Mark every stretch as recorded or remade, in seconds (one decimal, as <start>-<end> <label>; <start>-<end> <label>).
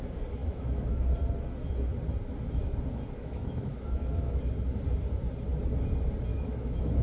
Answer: 0.0-0.4 recorded; 0.4-1.1 remade; 1.1-3.2 recorded; 3.2-4.4 remade; 4.4-6.3 recorded; 6.3-7.0 remade